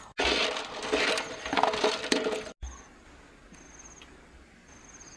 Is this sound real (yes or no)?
yes